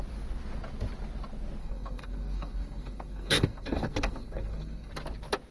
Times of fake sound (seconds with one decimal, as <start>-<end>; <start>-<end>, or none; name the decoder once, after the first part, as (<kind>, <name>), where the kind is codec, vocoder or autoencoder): 1.6-4.9 (codec, SNAC)